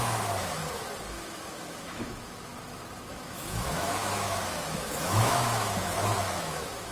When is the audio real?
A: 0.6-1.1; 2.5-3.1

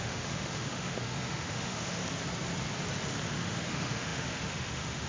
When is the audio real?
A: 2.0-3.3

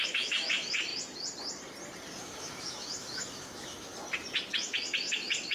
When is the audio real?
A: 0.9-2.2; 3.9-4.5